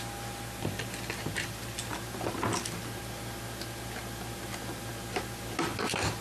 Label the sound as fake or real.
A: real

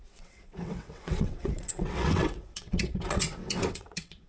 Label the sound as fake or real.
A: fake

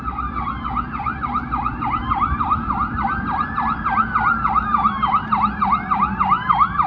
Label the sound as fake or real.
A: real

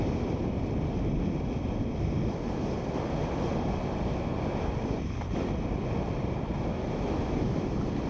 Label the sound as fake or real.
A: real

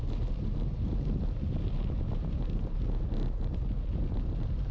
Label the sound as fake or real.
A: real